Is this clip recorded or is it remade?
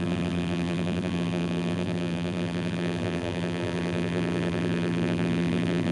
remade